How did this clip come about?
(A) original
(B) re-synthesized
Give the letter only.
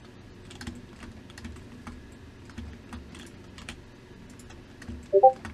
A